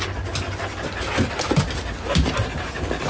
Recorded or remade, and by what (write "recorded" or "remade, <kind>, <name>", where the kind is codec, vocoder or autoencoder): recorded